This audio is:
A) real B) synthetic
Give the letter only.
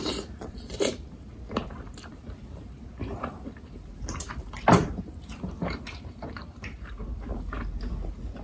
B